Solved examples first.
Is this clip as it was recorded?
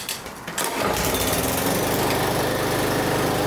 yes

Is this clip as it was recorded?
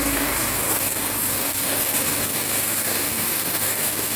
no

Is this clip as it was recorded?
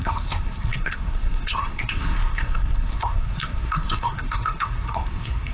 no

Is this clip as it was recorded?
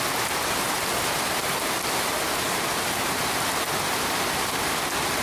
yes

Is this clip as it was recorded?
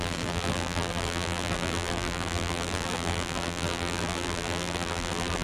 no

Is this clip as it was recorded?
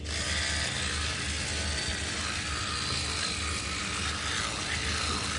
yes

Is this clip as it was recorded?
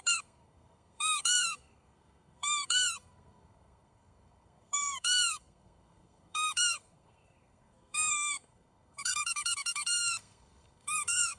no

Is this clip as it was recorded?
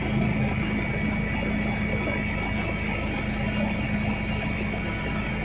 yes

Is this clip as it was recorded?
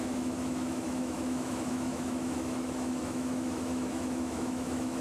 no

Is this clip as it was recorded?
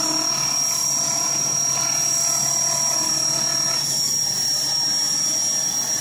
yes